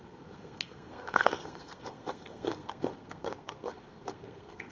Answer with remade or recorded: remade